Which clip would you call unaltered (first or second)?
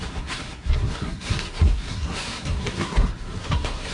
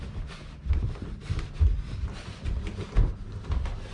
second